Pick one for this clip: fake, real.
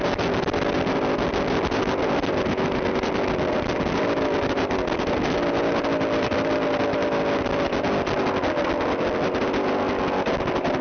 real